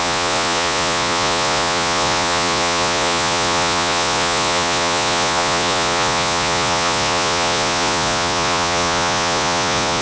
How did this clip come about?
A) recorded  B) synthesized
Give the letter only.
B